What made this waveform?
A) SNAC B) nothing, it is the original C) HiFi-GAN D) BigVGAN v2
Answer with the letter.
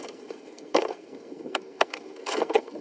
A